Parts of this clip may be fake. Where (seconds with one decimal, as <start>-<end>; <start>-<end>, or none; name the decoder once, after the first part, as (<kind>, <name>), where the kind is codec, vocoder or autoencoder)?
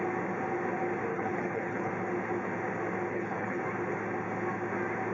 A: 1.1-1.9 (codec, HILCodec); 3.1-3.6